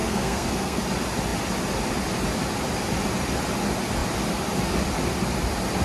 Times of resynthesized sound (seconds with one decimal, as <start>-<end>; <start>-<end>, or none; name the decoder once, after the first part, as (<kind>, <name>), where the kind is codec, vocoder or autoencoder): 0.0-0.8 (codec, SNAC)